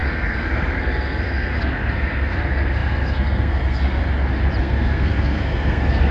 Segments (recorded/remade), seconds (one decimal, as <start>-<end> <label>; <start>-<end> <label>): 0.0-4.0 remade; 4.0-4.6 recorded; 4.6-6.1 remade